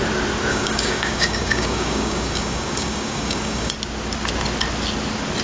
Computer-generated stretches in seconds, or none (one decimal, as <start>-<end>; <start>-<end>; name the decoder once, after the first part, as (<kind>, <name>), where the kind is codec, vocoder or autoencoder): 0.5-3.7 (codec, DAC)